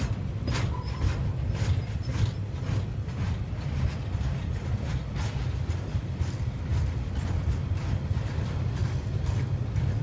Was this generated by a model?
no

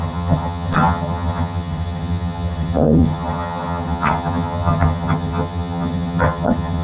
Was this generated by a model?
yes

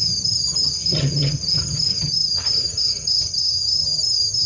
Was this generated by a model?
yes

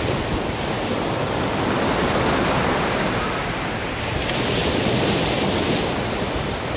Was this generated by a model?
no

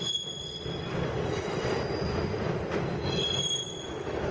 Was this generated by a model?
no